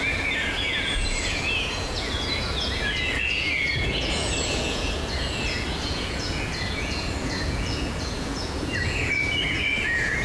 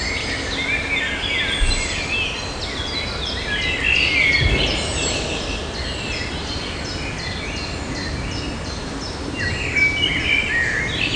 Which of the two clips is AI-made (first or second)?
first